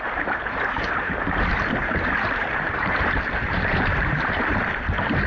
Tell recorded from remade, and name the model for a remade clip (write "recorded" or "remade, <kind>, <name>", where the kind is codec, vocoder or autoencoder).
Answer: remade, vocoder, BigVGAN v2